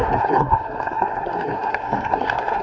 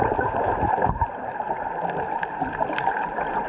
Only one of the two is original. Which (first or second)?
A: second